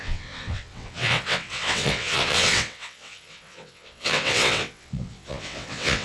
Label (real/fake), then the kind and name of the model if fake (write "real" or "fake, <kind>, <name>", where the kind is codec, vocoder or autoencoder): fake, vocoder, WaveNeXt